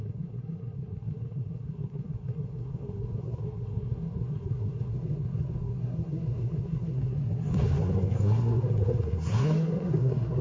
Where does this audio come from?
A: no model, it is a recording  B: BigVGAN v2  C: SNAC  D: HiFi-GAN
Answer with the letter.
C